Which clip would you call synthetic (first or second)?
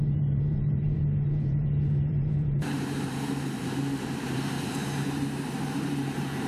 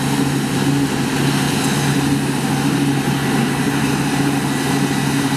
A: first